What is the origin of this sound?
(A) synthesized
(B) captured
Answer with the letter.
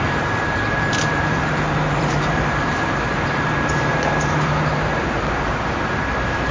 A